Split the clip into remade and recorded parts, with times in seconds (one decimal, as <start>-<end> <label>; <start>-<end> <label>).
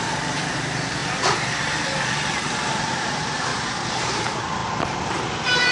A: 0.0-1.0 remade; 1.0-2.9 recorded; 2.9-5.7 remade